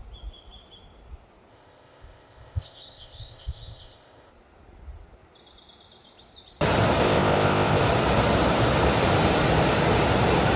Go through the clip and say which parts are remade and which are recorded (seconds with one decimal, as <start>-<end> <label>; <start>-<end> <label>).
0.0-1.5 recorded; 1.5-4.3 remade; 4.3-7.0 recorded; 7.0-7.8 remade; 7.8-10.6 recorded